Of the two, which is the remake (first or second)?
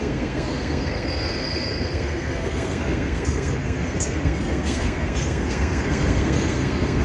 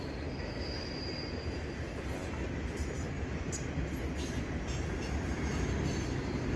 first